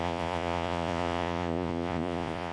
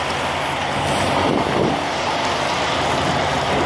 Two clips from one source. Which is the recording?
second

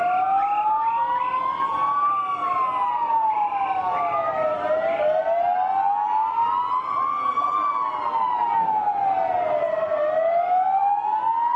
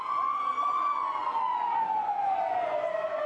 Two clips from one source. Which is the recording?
first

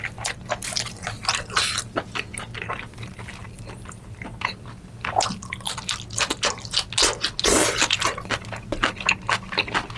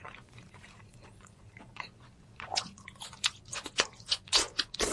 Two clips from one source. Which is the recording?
first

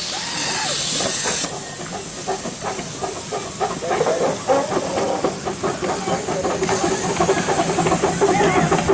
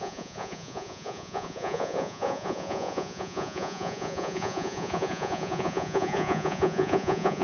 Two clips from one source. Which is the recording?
first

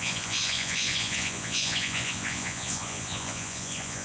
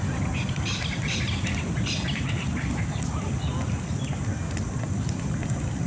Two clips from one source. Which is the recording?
second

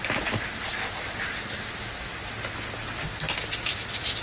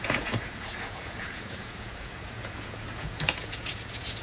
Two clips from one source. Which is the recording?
first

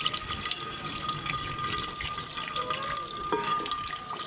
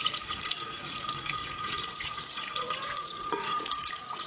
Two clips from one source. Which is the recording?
first